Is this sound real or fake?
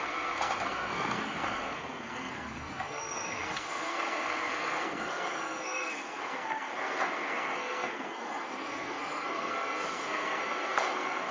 fake